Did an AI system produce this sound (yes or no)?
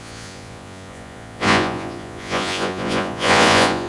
yes